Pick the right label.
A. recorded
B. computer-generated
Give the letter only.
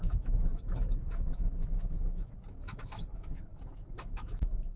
B